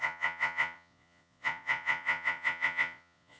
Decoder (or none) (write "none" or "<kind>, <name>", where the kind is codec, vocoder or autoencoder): vocoder, Vocos